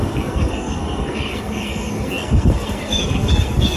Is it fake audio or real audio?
fake